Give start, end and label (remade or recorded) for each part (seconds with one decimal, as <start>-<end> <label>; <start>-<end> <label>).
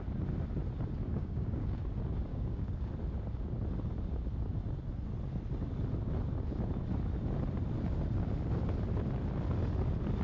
0.0-1.1 recorded; 1.1-1.8 remade; 1.8-2.3 recorded; 2.3-2.9 remade; 2.9-10.2 recorded